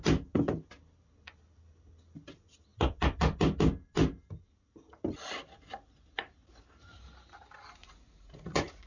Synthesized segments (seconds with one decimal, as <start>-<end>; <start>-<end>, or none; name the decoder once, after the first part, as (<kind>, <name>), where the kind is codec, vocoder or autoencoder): 7.8-8.9 (vocoder, Vocos)